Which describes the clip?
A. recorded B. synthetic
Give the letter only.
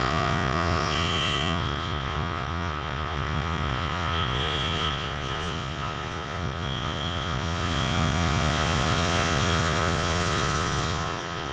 B